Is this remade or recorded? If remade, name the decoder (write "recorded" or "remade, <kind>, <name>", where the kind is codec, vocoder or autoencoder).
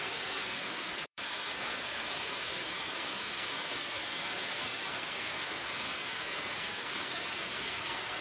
remade, codec, SNAC